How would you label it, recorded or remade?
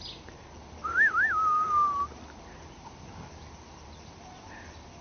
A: recorded